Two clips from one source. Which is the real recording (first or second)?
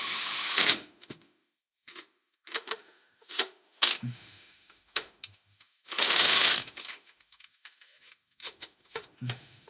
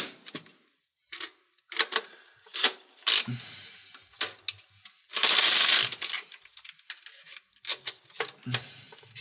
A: second